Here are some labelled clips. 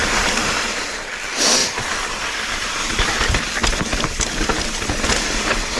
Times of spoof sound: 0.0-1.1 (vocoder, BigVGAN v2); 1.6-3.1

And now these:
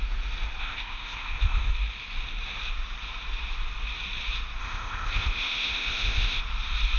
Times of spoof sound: 0.6-1.7 (codec, ZipCodec); 4.6-6.4

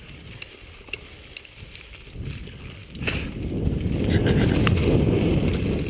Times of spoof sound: none

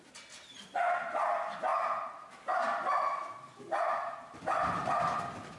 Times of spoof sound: none